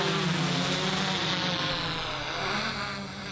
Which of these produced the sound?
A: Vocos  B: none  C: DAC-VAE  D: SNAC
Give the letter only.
B